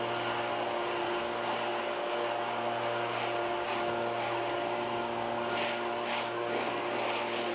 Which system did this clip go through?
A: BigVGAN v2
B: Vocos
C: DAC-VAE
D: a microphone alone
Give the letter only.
D